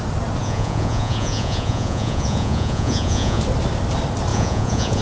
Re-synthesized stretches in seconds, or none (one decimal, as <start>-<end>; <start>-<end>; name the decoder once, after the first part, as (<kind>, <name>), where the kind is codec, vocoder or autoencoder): 0.4-3.4 (vocoder, Vocos); 4.3-5.0

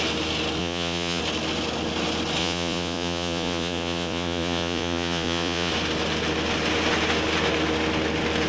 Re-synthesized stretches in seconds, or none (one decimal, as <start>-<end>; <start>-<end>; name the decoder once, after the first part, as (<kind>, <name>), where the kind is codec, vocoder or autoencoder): 0.6-1.2 (vocoder, Vocos); 2.4-5.7